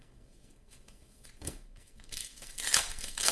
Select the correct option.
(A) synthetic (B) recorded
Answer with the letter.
A